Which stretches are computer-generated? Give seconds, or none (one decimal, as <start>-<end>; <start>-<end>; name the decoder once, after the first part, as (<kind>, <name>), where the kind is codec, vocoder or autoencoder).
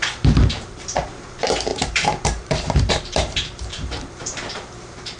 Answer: 0.0-5.2 (vocoder, BigVGAN v2)